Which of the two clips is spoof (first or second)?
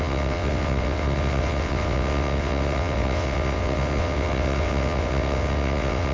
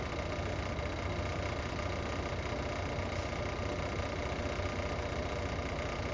first